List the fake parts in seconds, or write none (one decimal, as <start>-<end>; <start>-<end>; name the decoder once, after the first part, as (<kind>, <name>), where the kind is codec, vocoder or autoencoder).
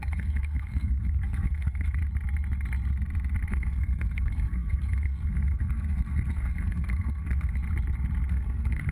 0.0-2.0 (codec, SNAC); 3.5-7.6; 8.3-8.9